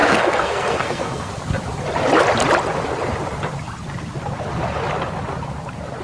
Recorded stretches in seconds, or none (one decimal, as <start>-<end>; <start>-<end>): 1.3-6.0

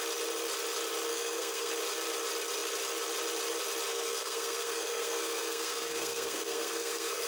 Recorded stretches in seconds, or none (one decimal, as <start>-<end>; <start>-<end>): 0.0-1.1; 1.7-3.9

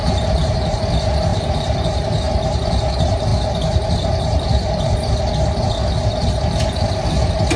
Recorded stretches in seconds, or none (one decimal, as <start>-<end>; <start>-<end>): 0.8-1.3; 2.8-3.3; 5.2-7.6

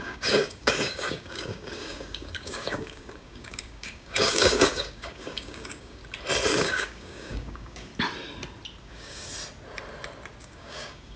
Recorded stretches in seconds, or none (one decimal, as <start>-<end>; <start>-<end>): 6.0-6.6; 7.9-8.8; 9.3-10.4

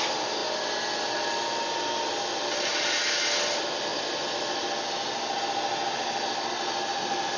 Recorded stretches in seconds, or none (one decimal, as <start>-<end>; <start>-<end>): 0.0-7.4

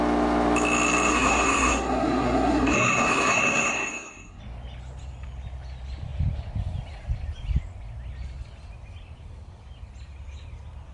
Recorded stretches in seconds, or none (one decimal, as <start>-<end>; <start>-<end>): 0.0-1.1; 4.4-10.9

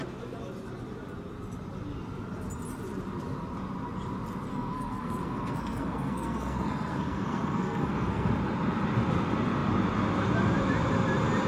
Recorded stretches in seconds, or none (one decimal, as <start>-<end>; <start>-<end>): 0.0-4.5; 8.3-11.5